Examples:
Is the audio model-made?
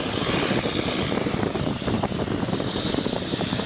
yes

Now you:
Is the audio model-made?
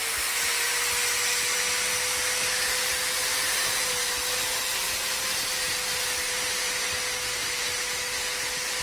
no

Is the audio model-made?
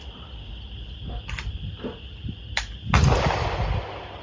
no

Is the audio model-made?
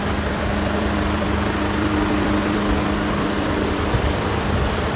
yes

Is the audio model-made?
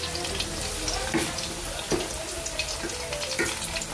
no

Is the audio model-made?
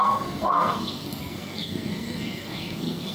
yes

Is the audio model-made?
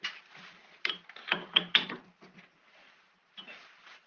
no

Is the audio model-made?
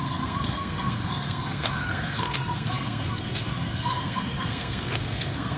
yes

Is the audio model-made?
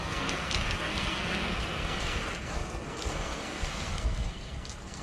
yes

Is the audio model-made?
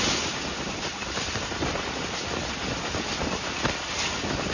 no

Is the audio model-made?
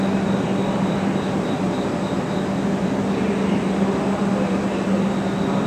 no